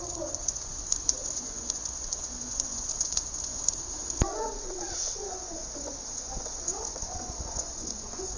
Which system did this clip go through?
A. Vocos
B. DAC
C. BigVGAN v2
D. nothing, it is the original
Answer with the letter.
A